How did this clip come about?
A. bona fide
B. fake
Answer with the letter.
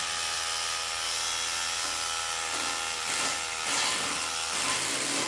A